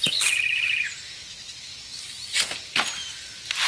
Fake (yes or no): no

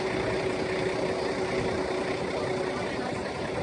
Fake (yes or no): yes